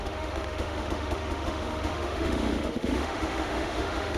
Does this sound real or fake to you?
fake